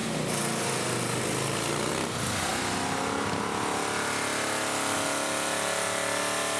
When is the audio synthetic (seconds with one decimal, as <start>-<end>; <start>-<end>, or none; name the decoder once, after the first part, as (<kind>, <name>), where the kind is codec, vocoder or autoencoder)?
none